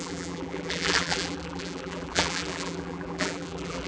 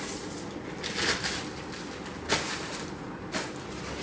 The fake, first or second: first